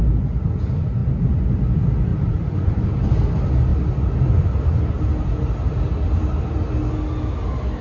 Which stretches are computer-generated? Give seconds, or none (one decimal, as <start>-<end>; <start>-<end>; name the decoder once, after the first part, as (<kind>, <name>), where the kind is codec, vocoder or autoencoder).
2.1-2.9 (vocoder, BigVGAN v2)